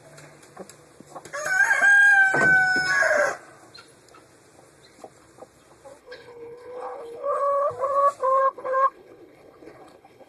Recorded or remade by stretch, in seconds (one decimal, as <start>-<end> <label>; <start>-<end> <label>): 0.0-6.0 recorded; 6.0-7.7 remade; 7.7-8.4 recorded; 8.4-10.3 remade

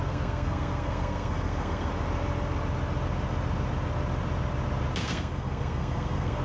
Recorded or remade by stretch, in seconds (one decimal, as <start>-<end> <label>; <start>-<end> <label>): 0.0-1.9 remade; 1.9-5.0 recorded; 5.0-6.4 remade